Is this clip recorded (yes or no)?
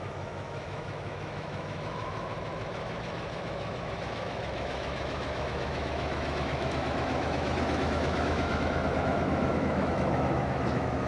no